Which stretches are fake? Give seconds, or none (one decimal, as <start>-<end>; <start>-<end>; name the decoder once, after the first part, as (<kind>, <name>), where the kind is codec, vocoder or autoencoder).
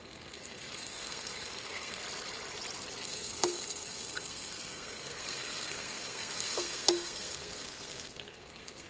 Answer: 0.0-2.0 (codec, SNAC); 3.0-8.9